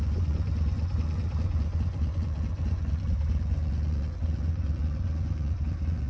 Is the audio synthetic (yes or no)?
yes